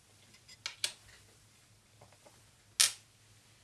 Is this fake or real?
real